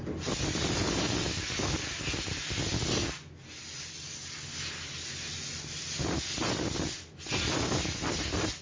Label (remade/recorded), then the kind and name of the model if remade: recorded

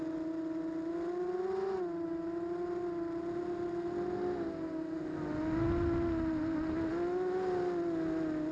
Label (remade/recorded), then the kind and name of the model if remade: recorded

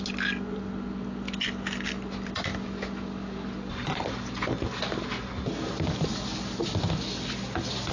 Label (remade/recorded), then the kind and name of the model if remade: recorded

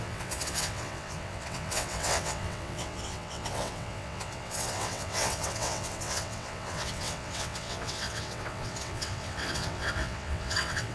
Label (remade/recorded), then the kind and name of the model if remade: remade, vocoder, WaveNeXt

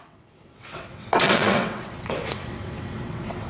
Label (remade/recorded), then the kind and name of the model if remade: remade, vocoder, WaveNeXt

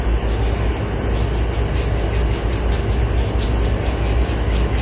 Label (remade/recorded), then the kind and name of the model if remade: recorded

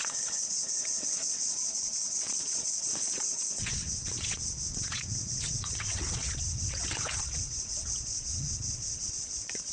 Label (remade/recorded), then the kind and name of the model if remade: remade, vocoder, WaveNeXt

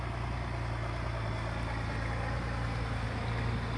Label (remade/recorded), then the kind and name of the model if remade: recorded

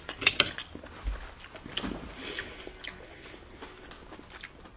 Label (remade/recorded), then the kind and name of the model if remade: recorded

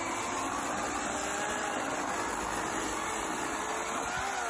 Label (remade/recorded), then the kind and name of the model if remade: recorded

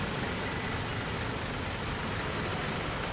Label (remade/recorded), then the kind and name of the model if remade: recorded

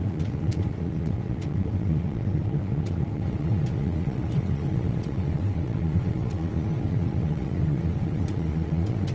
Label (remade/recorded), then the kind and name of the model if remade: remade, vocoder, WaveNeXt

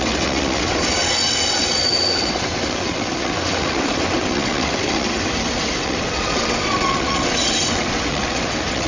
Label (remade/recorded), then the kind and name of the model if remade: remade, vocoder, WaveNeXt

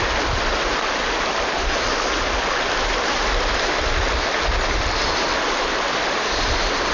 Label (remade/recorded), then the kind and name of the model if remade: recorded